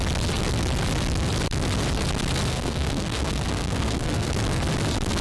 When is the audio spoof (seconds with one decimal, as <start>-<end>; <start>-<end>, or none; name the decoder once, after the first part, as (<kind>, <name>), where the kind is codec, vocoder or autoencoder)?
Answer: 2.5-4.3 (codec, SNAC)

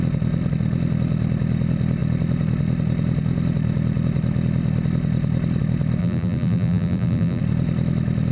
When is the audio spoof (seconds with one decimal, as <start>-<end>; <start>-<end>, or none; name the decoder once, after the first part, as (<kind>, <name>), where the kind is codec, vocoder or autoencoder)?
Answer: 6.0-7.4 (vocoder, BigVGAN v2)